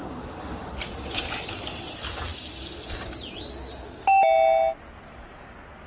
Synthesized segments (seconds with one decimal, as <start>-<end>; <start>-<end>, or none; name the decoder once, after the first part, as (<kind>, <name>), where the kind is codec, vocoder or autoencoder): none

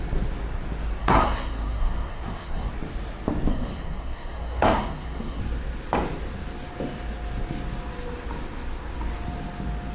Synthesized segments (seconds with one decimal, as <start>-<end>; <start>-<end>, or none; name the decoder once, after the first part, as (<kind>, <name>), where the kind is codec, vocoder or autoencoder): 1.0-2.7 (codec, SNAC); 3.5-5.4

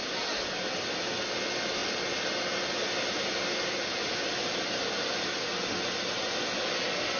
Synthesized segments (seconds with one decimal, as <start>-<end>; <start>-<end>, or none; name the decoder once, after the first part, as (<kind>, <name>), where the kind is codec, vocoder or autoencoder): none

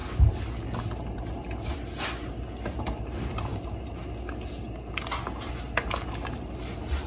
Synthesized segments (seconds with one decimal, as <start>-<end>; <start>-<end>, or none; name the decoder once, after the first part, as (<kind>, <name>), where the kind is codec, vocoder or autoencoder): none

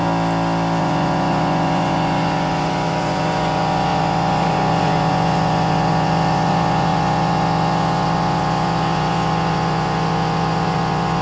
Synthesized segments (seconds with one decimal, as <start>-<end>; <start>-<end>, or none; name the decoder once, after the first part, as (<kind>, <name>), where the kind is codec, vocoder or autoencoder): 0.8-11.2 (vocoder, Vocos)

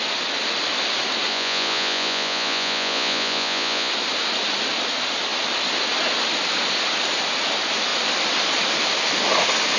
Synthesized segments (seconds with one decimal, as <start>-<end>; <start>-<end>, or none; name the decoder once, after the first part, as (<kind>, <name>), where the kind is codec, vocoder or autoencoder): 1.3-3.9 (vocoder, Vocos)

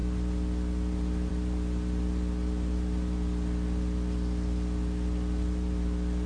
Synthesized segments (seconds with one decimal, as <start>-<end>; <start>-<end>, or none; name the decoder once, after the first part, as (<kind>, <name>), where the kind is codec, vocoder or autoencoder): none